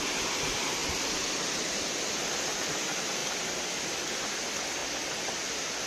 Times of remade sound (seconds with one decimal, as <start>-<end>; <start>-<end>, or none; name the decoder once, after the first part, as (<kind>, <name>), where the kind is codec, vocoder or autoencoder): 0.8-1.8 (vocoder, BigVGAN v2)